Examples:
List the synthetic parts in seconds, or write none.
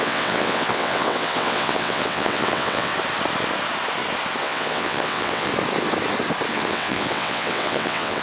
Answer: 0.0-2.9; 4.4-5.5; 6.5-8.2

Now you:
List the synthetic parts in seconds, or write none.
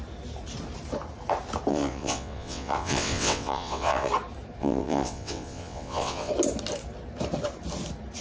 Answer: 1.7-4.1; 4.6-6.3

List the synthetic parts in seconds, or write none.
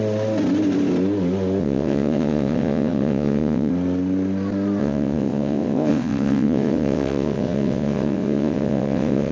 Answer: 1.6-3.7; 4.8-9.3